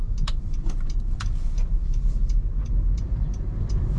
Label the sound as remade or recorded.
remade